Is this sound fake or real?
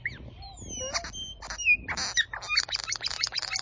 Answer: real